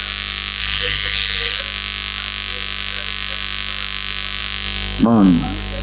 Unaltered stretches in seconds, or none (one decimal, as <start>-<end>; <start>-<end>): 0.0-0.6; 1.6-5.8